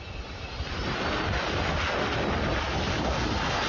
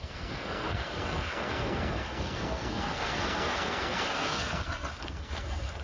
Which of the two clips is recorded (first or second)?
first